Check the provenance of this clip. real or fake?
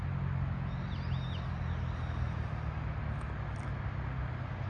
real